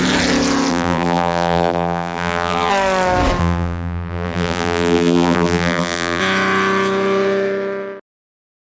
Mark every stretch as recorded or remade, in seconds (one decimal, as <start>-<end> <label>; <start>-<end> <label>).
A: 0.0-0.7 recorded; 0.7-2.7 remade; 2.7-3.4 recorded; 3.4-6.2 remade; 6.2-8.6 recorded

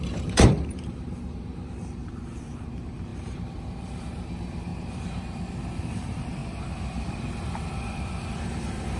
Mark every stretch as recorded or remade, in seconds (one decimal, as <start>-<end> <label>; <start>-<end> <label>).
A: 0.0-4.7 remade; 4.7-5.8 recorded; 5.8-6.4 remade; 6.4-8.4 recorded; 8.4-9.0 remade

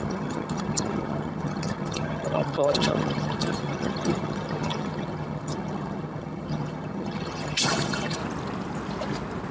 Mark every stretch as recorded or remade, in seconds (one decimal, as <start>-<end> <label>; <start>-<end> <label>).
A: 0.0-8.2 remade; 8.2-9.5 recorded

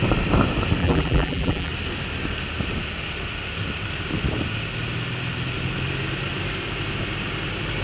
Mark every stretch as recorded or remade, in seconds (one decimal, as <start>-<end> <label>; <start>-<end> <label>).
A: 0.0-0.8 recorded; 0.8-1.7 remade; 1.7-7.8 recorded